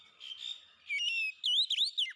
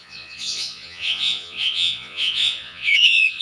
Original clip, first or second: first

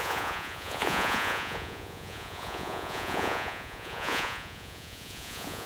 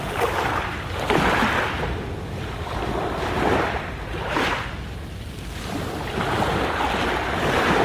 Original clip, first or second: second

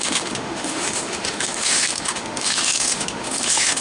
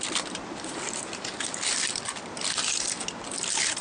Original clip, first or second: second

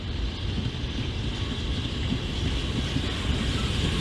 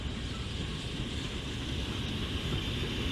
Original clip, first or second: second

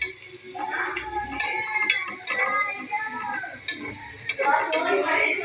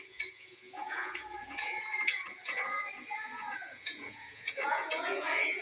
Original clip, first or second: first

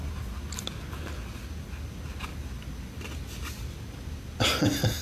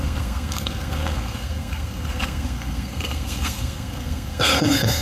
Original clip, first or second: first